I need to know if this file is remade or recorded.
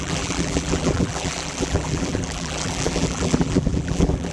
remade